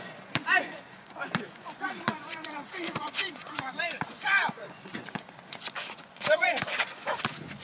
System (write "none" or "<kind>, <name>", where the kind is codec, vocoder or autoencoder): vocoder, Vocos